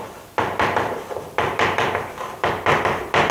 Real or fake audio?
fake